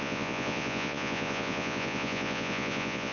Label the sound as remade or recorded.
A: remade